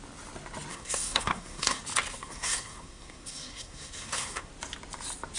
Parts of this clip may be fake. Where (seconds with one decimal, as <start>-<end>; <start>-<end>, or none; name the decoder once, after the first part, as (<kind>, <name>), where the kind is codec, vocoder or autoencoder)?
0.7-1.8 (codec, SNAC); 2.2-4.5